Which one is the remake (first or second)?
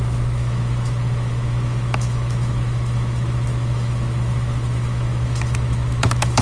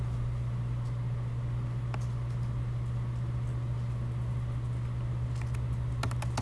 first